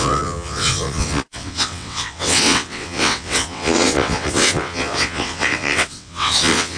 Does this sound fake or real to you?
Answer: fake